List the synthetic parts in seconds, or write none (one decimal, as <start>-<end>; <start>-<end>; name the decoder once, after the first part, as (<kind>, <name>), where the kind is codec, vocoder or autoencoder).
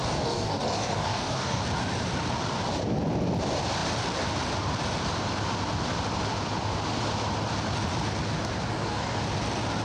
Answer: 0.0-1.6 (codec, DAC); 8.7-9.2